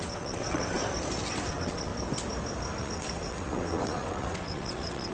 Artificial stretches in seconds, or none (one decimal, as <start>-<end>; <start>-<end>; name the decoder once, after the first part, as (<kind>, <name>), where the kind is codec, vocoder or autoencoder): 0.0-0.8 (vocoder, WaveNeXt); 1.5-1.9; 2.8-5.1